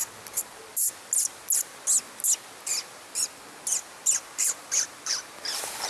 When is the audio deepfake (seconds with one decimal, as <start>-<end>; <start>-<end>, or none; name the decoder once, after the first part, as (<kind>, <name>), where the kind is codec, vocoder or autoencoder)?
none

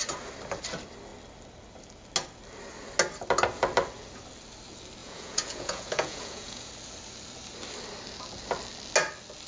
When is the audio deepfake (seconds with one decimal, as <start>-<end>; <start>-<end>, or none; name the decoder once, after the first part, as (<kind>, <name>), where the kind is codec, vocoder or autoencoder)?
5.0-6.7 (vocoder, Vocos)